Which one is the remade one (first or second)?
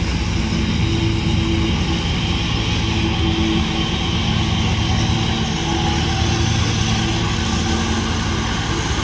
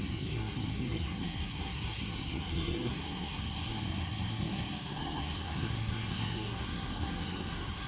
second